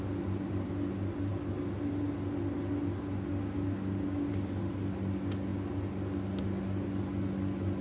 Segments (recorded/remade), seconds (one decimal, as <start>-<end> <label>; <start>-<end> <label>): 0.0-3.3 recorded; 3.3-4.3 remade; 4.3-7.8 recorded